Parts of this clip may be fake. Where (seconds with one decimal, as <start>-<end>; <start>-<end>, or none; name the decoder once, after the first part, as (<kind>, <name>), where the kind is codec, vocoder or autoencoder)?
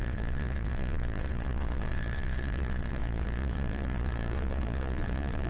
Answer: 0.0-5.5 (vocoder, Vocos)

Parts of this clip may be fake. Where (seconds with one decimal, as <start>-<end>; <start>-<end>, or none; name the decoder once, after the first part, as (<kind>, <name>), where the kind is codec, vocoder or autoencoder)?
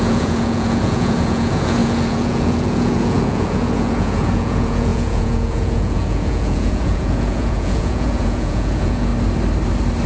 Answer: 0.0-9.1 (vocoder, Vocos)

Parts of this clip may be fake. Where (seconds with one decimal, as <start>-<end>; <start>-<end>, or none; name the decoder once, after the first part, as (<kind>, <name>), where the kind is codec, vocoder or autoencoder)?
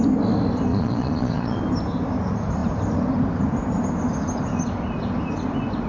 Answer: 0.7-1.6 (vocoder, Vocos)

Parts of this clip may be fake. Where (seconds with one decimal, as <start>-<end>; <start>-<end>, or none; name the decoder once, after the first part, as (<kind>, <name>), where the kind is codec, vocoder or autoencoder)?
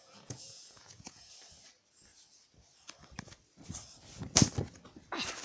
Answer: 0.0-1.3 (vocoder, Vocos)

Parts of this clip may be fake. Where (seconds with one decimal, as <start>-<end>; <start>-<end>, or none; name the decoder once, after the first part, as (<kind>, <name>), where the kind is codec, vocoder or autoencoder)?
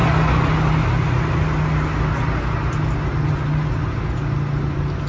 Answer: none